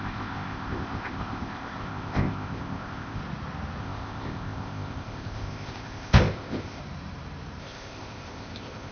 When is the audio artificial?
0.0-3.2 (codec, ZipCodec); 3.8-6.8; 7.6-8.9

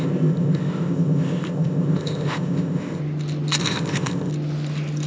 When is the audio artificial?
0.0-3.0 (codec, ZipCodec); 3.6-4.3

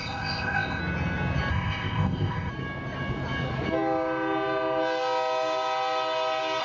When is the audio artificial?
0.0-0.8 (codec, ZipCodec); 1.5-2.5